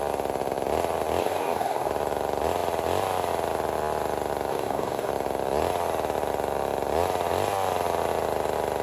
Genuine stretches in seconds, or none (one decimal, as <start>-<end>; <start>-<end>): 0.0-1.2; 1.9-4.5; 5.1-8.8